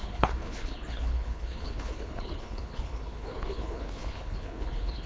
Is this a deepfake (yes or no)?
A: yes